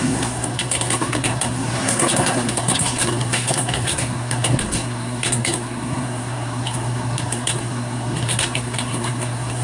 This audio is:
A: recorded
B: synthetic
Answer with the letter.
B